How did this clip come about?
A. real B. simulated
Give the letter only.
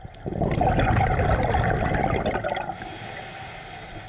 A